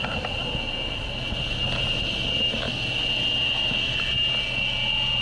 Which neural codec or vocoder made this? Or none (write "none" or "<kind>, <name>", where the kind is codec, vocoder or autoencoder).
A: none